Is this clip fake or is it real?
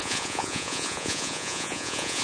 fake